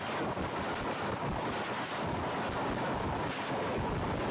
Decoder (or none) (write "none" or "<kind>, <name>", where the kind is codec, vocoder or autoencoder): none